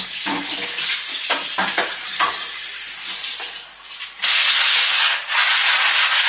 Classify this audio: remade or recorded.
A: recorded